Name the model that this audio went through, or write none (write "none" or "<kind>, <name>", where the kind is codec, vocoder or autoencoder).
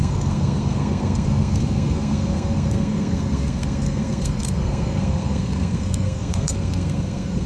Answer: codec, SNAC